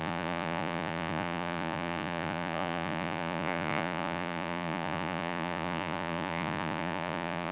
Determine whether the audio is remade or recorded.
remade